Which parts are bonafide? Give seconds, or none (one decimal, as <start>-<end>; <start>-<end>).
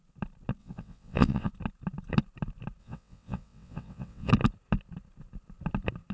0.0-0.6; 1.5-2.8; 4.3-6.1